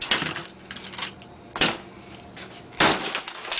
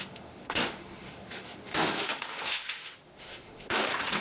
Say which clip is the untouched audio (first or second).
first